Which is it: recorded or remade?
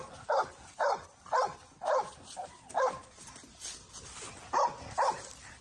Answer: recorded